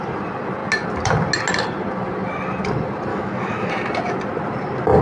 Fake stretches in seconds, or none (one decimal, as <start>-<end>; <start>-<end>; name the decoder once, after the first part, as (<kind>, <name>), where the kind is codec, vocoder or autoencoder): 3.1-3.7 (autoencoder, DAC-VAE)